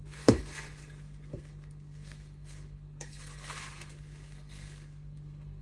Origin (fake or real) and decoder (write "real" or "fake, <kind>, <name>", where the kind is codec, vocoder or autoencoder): fake, codec, SNAC